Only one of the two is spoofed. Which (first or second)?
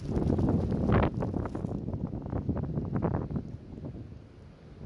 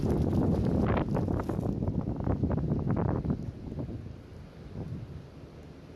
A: second